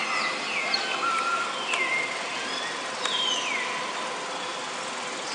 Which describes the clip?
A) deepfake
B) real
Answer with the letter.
B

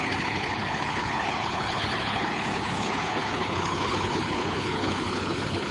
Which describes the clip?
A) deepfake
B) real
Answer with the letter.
A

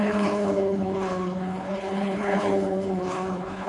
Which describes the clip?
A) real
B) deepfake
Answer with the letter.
B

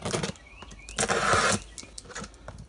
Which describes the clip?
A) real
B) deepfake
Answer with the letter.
A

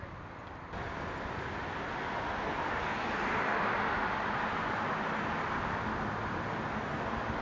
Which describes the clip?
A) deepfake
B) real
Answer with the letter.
B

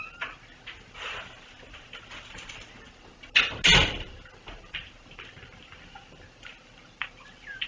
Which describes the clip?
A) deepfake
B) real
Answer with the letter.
B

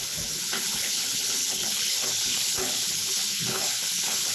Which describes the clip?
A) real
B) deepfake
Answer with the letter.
B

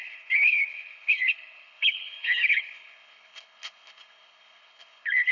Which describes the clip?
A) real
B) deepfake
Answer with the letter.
B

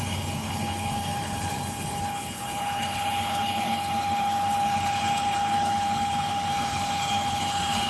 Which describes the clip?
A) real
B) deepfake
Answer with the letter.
B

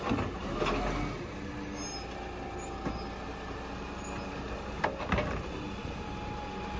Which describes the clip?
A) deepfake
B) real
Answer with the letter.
B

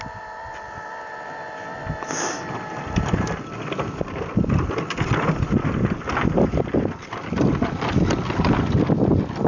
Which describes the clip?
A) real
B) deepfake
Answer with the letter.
A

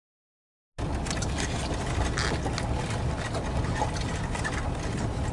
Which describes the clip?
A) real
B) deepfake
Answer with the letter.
A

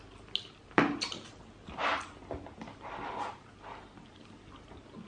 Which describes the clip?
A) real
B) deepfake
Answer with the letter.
A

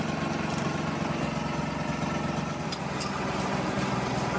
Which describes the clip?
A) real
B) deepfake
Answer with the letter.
A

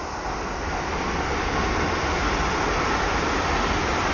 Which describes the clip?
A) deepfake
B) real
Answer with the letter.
B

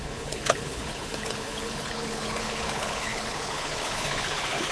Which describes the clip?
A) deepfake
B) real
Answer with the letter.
A